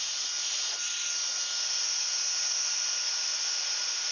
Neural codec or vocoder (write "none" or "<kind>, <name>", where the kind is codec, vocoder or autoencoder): none